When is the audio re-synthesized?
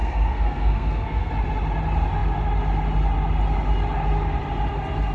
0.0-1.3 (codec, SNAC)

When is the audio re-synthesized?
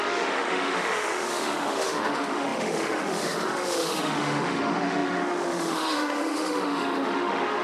0.0-7.6 (autoencoder, DAC-VAE)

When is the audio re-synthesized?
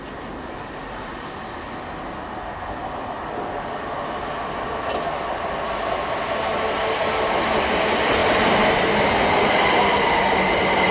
8.2-9.8 (vocoder, BigVGAN v2)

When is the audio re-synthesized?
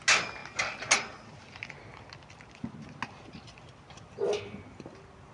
none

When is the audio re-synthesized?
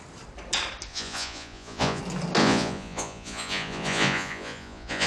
0.9-2.0 (vocoder, Vocos); 2.4-5.1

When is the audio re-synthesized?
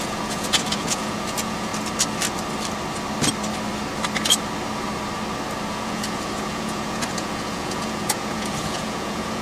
0.0-1.7 (vocoder, Vocos); 5.7-9.4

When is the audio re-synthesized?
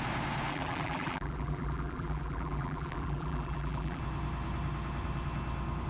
0.5-4.0 (vocoder, BigVGAN v2)